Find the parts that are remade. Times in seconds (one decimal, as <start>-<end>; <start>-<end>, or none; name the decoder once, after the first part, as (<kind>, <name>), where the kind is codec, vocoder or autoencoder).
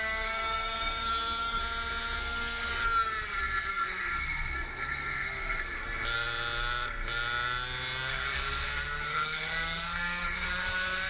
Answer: 0.0-1.6 (codec, SNAC); 2.2-2.7; 3.4-5.8; 8.1-11.1